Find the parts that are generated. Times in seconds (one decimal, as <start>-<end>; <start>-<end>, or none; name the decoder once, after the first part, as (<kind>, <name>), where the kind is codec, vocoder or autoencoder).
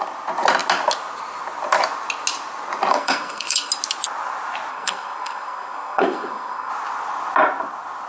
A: 2.9-3.7 (codec, SNAC); 4.7-6.7